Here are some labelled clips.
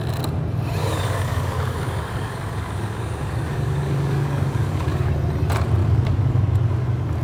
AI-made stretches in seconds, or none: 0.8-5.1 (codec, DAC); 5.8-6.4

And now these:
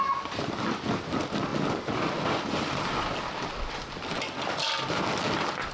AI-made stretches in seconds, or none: none